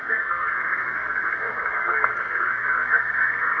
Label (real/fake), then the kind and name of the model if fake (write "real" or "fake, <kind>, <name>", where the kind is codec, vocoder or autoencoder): fake, codec, SNAC